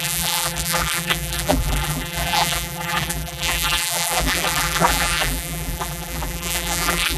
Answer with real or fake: fake